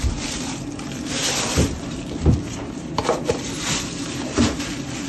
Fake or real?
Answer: fake